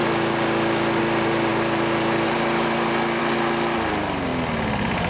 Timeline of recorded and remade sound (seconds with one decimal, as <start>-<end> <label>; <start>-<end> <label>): 0.0-1.0 recorded; 1.0-4.3 remade; 4.3-5.1 recorded